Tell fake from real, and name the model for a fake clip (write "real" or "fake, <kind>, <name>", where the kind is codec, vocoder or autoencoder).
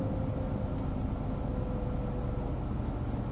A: real